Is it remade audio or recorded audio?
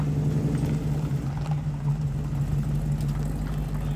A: recorded